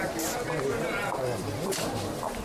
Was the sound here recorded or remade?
recorded